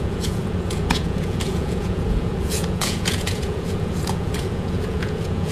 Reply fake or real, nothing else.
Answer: fake